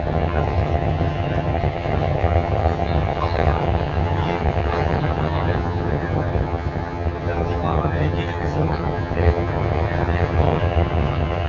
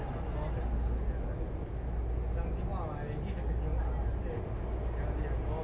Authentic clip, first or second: second